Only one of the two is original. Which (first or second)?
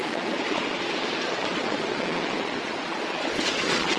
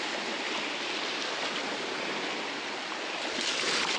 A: second